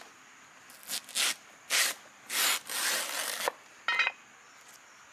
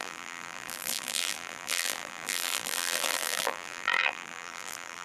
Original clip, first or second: first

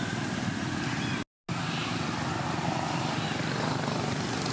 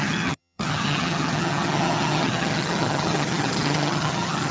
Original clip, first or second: first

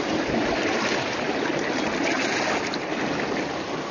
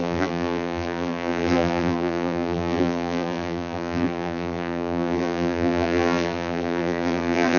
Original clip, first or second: first